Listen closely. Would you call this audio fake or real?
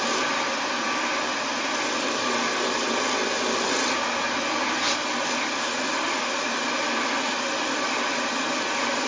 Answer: fake